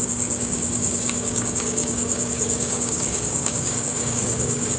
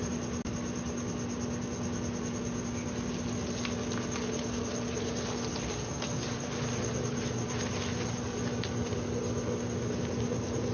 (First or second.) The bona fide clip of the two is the second